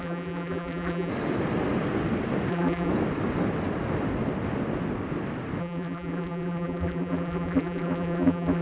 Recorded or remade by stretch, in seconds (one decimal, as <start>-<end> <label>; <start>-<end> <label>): 0.0-1.1 remade; 1.1-2.5 recorded; 2.5-2.9 remade; 2.9-5.6 recorded; 5.6-8.6 remade

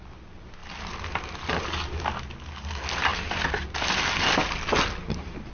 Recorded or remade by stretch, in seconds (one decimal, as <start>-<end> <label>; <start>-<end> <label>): 0.0-5.5 recorded